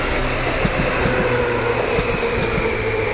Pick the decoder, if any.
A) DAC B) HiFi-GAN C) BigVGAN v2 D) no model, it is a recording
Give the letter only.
D